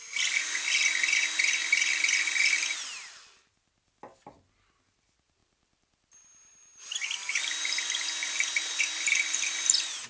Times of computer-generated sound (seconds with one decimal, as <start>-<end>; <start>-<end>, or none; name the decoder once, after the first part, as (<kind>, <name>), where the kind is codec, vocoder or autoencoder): 5.4-7.4 (vocoder, BigVGAN v2); 8.2-10.1